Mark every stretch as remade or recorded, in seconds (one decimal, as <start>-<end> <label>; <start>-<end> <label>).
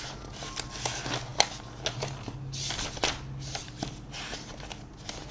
0.0-5.3 recorded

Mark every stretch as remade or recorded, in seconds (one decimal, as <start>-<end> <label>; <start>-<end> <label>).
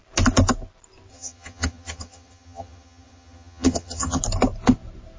0.0-1.1 recorded; 1.1-4.2 remade; 4.2-5.2 recorded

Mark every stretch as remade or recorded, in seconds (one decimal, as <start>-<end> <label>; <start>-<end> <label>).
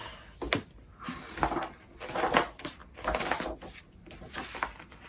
0.0-5.1 recorded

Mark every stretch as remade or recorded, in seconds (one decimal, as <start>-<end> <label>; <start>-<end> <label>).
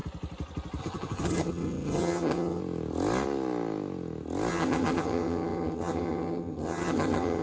0.0-0.8 recorded; 0.8-2.6 remade; 2.6-4.5 recorded; 4.5-7.4 remade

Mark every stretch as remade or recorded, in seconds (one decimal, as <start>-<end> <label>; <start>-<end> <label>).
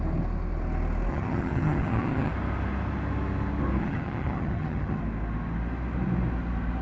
0.0-1.1 recorded; 1.1-2.3 remade; 2.3-3.8 recorded; 3.8-5.0 remade; 5.0-6.8 recorded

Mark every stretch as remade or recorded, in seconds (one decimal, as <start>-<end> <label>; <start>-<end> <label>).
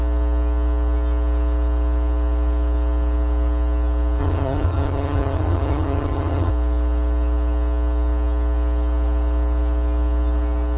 0.0-4.2 recorded; 4.2-6.5 remade; 6.5-10.8 recorded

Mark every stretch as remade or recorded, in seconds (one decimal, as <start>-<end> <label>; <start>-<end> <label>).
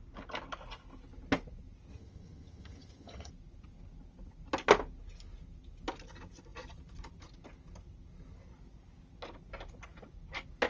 0.0-1.9 recorded; 1.9-3.3 remade; 3.3-10.7 recorded